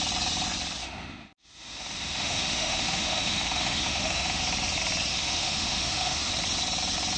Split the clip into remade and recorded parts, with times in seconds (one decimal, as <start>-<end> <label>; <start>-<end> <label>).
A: 0.0-0.8 recorded; 0.8-4.4 remade; 4.4-5.1 recorded; 5.1-6.3 remade; 6.3-7.2 recorded